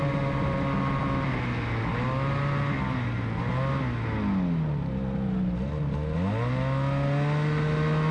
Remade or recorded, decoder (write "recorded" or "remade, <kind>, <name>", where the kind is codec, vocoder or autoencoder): recorded